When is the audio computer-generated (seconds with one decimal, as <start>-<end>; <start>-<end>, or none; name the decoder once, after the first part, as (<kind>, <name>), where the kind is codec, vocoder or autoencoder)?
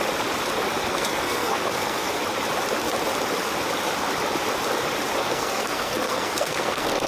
0.9-2.2 (codec, SNAC); 5.2-7.1